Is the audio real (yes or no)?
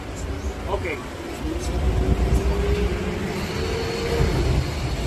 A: yes